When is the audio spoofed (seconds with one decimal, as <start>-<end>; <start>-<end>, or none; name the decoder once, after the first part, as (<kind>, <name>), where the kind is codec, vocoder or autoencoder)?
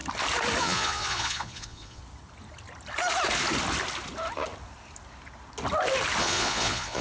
0.6-2.0 (vocoder, Vocos); 6.2-7.0